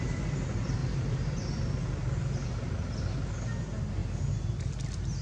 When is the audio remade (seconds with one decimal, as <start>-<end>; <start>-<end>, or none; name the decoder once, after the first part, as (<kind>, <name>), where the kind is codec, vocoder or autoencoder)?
0.8-1.4 (vocoder, BigVGAN v2); 4.0-4.6

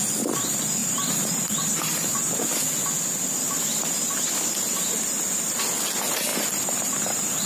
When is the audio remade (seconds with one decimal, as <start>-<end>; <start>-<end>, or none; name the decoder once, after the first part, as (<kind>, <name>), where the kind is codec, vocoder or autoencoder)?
0.8-2.4 (vocoder, BigVGAN v2); 6.3-7.5

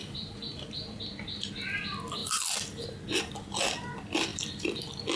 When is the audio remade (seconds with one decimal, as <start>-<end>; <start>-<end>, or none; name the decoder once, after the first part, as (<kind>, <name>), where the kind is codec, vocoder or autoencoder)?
0.0-1.0 (vocoder, BigVGAN v2); 4.3-4.8

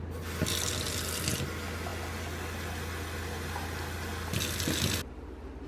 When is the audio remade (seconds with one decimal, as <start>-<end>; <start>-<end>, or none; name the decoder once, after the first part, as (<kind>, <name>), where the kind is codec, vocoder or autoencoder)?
none

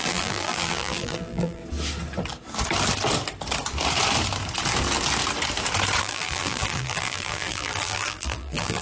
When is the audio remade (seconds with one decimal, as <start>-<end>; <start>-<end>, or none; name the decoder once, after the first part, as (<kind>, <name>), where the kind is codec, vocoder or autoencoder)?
0.0-1.6 (vocoder, BigVGAN v2); 6.0-8.8

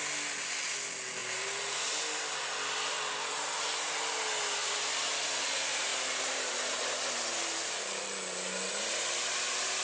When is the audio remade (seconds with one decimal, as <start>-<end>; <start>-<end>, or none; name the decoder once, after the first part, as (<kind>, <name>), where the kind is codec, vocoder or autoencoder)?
4.6-5.4 (vocoder, BigVGAN v2); 5.9-6.8

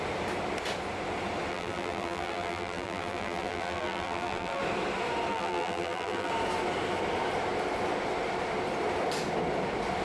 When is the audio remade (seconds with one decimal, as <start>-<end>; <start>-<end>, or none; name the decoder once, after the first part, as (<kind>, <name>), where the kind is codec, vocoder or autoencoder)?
1.5-4.6 (vocoder, BigVGAN v2); 5.3-6.3